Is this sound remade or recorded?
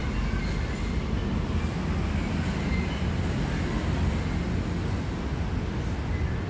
recorded